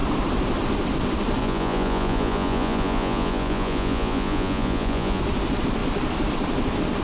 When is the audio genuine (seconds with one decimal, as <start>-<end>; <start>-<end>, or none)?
0.0-1.4; 5.2-7.0